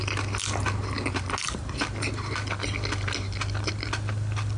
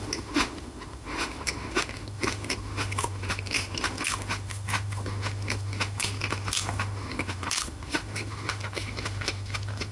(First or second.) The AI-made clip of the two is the second